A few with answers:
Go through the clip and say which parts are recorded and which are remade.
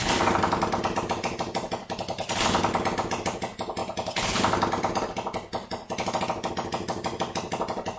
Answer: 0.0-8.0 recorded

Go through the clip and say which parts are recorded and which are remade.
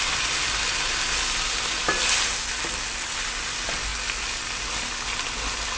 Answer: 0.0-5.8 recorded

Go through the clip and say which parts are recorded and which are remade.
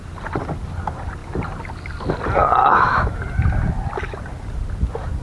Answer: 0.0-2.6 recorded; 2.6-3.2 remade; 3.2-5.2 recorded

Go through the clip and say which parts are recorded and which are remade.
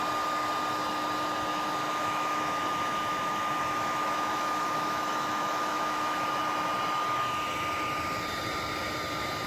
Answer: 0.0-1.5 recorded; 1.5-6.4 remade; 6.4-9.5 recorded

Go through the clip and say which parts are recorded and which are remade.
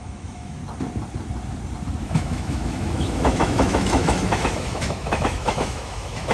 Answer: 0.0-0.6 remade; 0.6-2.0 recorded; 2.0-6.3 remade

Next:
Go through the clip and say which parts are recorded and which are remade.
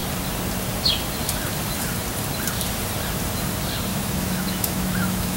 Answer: 0.0-3.9 recorded; 3.9-5.4 remade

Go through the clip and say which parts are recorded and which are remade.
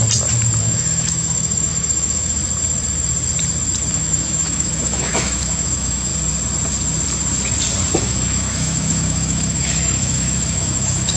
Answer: 0.0-0.6 recorded; 0.6-2.4 remade; 2.4-3.9 recorded; 3.9-6.1 remade; 6.1-8.0 recorded; 8.0-11.2 remade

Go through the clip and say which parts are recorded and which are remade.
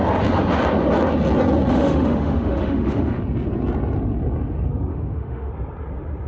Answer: 0.0-1.7 recorded; 1.7-3.2 remade; 3.2-4.9 recorded; 4.9-5.5 remade; 5.5-6.3 recorded